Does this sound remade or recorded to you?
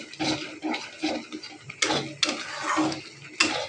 recorded